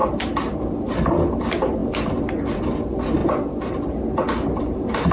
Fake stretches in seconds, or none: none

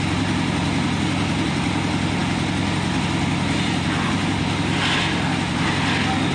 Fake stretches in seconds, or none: none

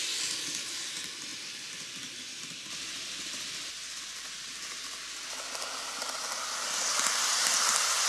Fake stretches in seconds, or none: none